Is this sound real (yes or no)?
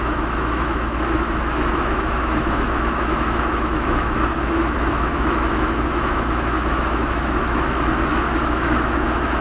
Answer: no